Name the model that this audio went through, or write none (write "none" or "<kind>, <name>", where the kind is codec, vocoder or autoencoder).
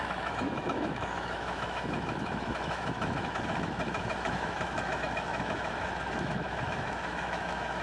autoencoder, DAC-VAE